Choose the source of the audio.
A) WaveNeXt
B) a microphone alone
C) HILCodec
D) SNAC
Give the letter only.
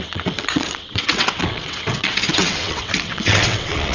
A